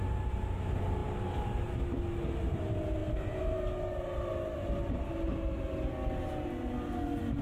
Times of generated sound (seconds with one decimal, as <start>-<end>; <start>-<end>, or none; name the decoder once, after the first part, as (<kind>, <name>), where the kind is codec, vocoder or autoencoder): none